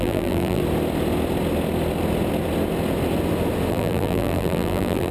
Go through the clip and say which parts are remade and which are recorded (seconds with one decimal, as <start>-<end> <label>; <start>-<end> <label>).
0.0-0.6 remade; 0.6-3.7 recorded; 3.7-5.1 remade